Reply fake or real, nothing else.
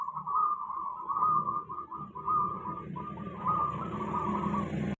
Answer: real